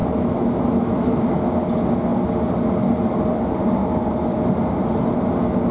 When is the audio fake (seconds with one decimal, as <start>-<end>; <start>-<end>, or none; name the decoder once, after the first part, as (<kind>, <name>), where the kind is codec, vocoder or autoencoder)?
0.0-1.4 (autoencoder, DAC-VAE)

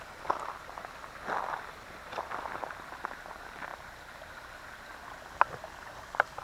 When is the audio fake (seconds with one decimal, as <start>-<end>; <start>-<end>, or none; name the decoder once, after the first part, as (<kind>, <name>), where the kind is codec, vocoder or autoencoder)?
none

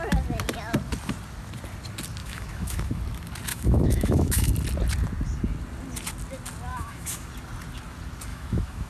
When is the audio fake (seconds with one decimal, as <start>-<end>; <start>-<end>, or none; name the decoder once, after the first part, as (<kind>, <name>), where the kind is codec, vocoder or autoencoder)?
2.2-3.0 (autoencoder, DAC-VAE); 3.5-4.5; 6.7-7.3; 8.3-8.9

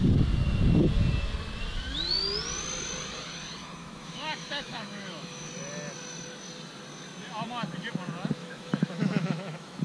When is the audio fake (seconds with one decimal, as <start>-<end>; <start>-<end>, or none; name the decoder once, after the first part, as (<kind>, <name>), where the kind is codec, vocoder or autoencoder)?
3.8-5.5 (autoencoder, DAC-VAE); 8.4-9.8

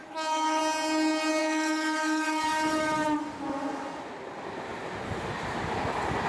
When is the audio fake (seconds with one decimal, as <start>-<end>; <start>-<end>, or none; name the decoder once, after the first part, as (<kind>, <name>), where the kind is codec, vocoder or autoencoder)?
0.0-0.6 (autoencoder, DAC-VAE); 1.4-3.2

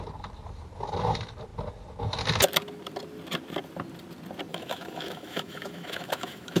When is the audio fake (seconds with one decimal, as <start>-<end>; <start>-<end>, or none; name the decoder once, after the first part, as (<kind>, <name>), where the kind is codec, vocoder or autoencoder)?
4.5-6.6 (autoencoder, DAC-VAE)

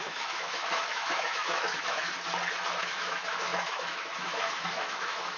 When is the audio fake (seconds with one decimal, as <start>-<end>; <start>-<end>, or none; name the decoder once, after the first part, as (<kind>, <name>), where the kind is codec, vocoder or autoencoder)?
0.0-2.1 (autoencoder, DAC-VAE); 2.8-5.4

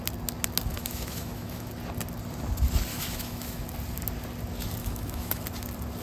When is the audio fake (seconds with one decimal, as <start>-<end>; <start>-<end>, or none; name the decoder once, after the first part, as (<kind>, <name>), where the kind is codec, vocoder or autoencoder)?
0.7-1.7 (autoencoder, DAC-VAE); 2.9-3.6; 4.8-5.4